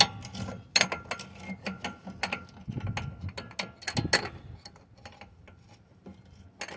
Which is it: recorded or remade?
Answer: recorded